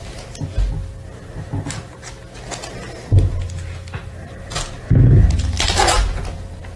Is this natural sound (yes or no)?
yes